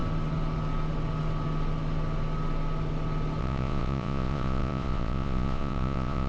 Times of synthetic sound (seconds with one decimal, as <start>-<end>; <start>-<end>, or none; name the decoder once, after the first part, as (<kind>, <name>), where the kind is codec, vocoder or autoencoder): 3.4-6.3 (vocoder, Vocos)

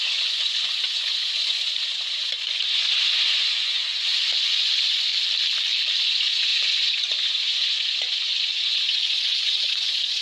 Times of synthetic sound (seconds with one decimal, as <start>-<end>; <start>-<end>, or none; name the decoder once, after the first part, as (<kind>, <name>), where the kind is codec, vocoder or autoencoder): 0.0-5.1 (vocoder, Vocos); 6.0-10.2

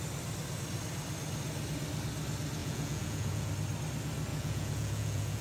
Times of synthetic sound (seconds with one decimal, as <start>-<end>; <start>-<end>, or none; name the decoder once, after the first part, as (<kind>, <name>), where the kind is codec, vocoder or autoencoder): 2.6-3.5 (vocoder, Vocos); 4.3-5.4

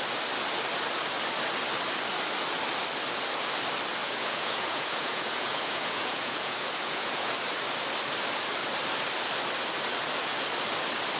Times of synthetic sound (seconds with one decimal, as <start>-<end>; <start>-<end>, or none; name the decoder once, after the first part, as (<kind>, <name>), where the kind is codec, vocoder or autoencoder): 4.0-7.3 (vocoder, Vocos)

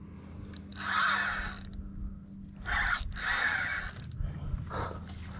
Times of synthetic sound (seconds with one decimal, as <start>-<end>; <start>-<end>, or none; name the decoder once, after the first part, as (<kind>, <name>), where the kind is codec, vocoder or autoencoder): none

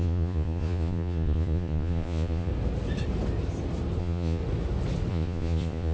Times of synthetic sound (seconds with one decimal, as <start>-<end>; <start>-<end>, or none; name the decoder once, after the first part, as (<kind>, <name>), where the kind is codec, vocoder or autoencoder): 0.0-2.5 (vocoder, Vocos); 4.0-4.4; 5.1-5.9